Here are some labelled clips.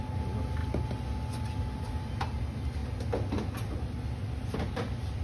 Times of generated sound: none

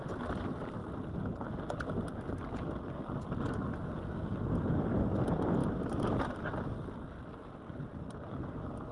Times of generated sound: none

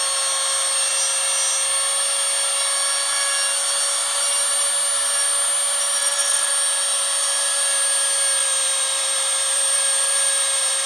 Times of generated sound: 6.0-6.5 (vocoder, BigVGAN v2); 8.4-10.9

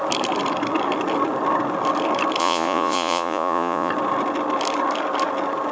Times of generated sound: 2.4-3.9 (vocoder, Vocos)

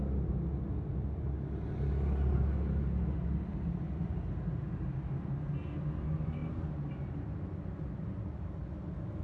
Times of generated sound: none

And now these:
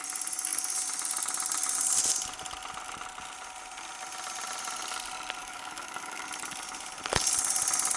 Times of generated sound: 5.4-6.2 (codec, DAC)

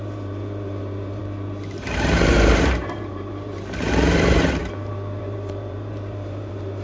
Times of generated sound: 0.0-4.6 (vocoder, BigVGAN v2); 5.2-6.8

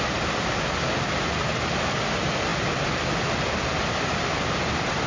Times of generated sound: none